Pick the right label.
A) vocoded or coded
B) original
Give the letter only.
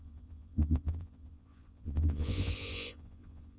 A